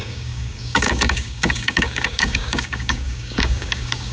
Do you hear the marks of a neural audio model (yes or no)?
yes